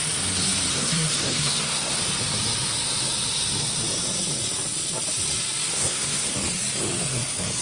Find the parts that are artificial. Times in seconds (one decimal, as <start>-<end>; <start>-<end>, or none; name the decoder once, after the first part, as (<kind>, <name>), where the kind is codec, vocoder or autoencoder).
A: 0.7-2.0 (codec, SNAC); 5.7-6.3